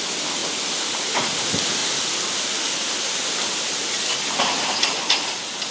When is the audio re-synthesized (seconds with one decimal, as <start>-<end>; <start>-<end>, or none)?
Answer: none